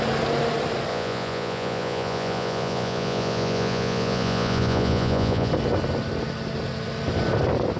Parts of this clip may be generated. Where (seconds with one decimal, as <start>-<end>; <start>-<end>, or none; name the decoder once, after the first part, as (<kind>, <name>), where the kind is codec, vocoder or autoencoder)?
0.9-5.5 (vocoder, Vocos)